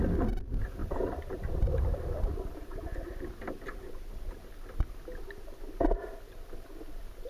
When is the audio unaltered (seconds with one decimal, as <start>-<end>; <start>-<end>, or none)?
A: 0.0-0.8; 1.5-7.3